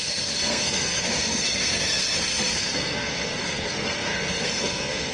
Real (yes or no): no